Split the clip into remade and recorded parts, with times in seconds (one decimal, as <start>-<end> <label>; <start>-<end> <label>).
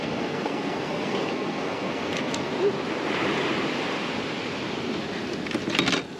0.0-2.5 remade; 2.5-6.2 recorded